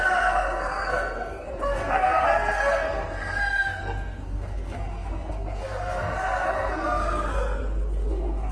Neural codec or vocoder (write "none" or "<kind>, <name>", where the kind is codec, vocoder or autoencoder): codec, SNAC